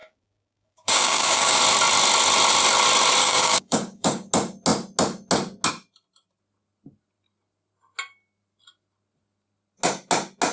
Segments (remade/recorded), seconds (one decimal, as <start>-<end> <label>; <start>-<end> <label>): 0.0-1.6 remade; 1.6-3.2 recorded; 3.2-4.3 remade; 4.3-10.5 recorded